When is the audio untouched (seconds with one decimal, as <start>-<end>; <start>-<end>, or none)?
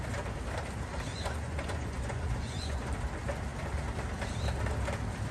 0.0-1.1; 2.9-5.3